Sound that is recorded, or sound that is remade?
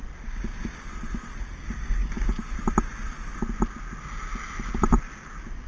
recorded